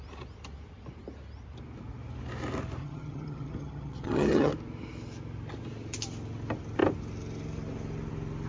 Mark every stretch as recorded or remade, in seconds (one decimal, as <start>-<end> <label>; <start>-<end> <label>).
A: 0.0-2.8 recorded; 2.8-4.5 remade; 4.5-8.5 recorded